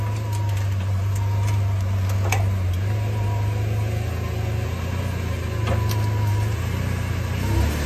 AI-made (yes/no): no